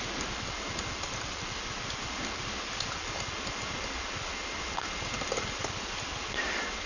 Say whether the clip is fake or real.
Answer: real